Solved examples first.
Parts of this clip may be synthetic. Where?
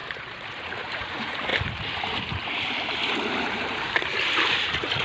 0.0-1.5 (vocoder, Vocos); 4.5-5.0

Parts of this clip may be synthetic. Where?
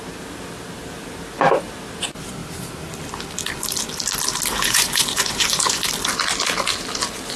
4.5-5.8 (vocoder, Vocos)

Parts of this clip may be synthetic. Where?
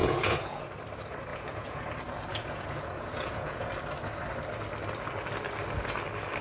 0.0-0.6 (vocoder, Vocos); 1.3-1.9; 2.3-3.7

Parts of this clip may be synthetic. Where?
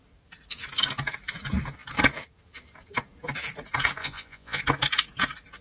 4.0-4.6 (vocoder, Vocos)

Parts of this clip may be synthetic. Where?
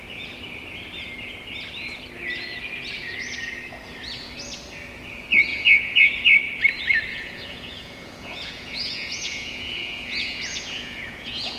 5.5-6.1 (vocoder, Vocos); 7.1-11.6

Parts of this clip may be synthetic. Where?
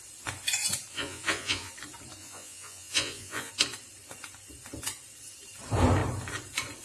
0.9-1.7 (vocoder, Vocos); 2.2-3.5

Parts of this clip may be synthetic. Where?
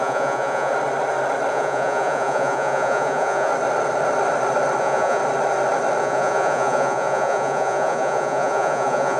0.0-0.7 (vocoder, Vocos); 1.5-3.5; 4.8-5.2; 6.0-9.2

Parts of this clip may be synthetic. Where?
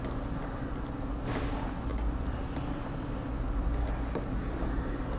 none